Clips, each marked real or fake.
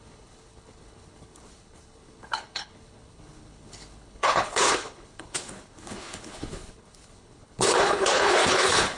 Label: fake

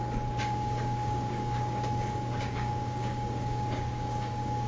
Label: fake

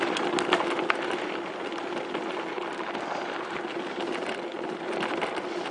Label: real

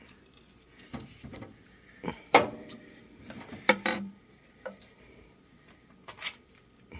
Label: fake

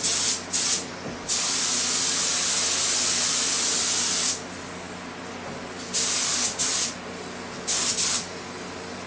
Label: real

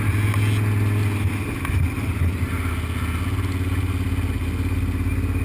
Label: real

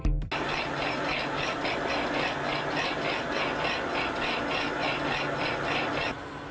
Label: real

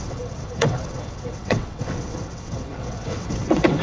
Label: fake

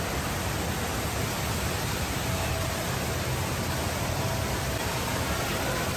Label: real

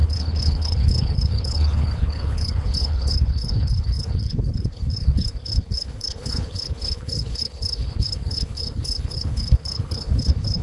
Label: fake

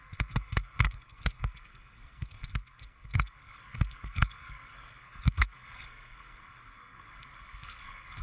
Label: fake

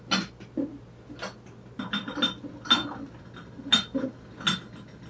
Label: real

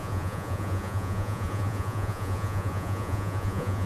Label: fake